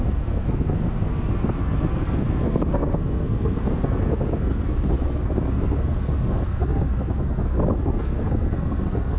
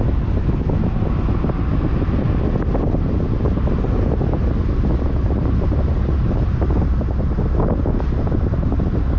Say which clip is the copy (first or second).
first